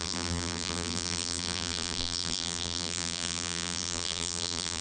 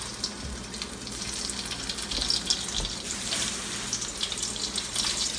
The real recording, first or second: second